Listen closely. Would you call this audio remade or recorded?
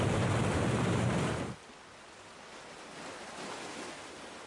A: recorded